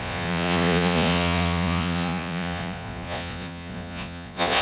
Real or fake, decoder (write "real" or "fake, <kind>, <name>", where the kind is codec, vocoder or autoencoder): fake, vocoder, Vocos